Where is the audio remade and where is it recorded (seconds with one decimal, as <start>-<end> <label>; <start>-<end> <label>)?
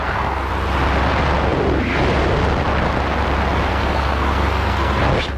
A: 0.0-0.5 remade; 0.5-3.7 recorded; 3.7-5.0 remade; 5.0-5.4 recorded